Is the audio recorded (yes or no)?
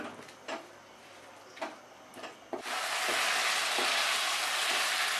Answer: yes